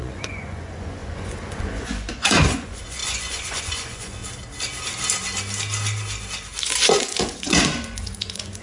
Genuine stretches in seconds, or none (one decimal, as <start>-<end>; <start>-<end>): 4.2-6.6